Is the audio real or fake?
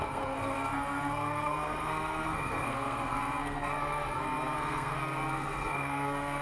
fake